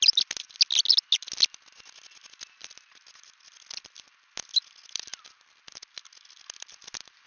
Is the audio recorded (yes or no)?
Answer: yes